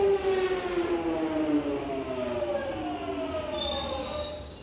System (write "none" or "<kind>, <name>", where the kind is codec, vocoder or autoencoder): none